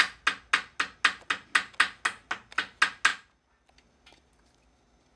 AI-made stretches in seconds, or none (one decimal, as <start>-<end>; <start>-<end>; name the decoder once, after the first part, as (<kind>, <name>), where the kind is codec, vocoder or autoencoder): none